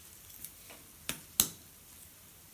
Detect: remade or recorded recorded